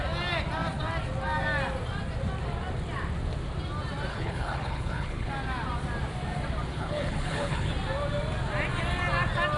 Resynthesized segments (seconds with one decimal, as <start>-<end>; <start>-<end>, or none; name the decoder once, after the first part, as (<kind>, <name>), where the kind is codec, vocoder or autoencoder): 4.1-5.3 (codec, HILCodec); 6.7-7.7